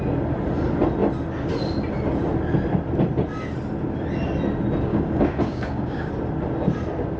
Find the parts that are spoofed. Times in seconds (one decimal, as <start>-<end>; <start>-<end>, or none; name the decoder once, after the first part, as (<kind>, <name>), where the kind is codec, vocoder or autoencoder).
4.9-6.1 (codec, DAC)